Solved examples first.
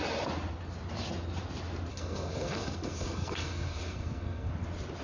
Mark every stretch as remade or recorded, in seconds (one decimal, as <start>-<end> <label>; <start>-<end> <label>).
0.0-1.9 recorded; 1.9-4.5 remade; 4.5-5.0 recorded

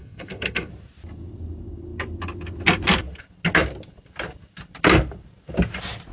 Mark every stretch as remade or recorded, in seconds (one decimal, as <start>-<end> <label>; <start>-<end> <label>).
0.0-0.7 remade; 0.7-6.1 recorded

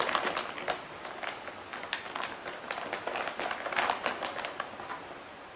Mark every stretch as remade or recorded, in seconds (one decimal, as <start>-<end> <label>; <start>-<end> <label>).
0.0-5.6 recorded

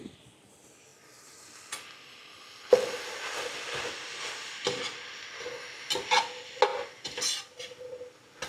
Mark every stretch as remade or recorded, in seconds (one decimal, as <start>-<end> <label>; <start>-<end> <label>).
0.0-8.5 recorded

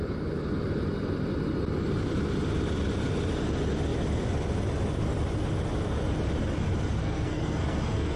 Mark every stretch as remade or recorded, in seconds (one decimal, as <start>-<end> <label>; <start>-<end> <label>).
0.0-7.0 recorded; 7.0-8.2 remade

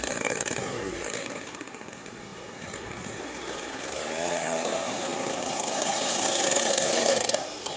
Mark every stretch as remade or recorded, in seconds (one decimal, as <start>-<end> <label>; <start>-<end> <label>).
0.0-7.8 remade